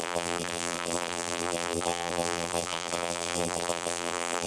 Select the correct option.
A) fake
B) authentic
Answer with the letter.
A